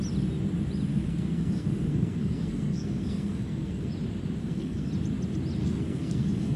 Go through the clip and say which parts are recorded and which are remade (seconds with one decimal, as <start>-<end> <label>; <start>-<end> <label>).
0.0-0.9 recorded; 0.9-3.9 remade; 3.9-4.4 recorded; 4.4-4.9 remade; 4.9-5.6 recorded; 5.6-6.6 remade